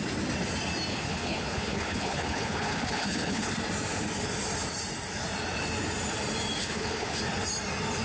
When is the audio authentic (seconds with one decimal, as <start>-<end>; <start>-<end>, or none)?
0.0-0.9; 3.5-6.6; 7.2-8.0